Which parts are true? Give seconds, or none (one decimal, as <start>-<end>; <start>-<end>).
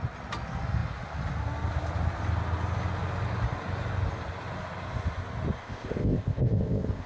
0.0-5.6